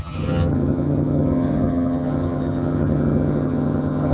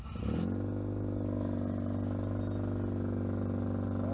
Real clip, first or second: second